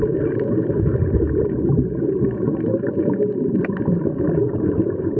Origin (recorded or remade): remade